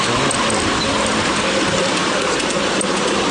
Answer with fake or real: real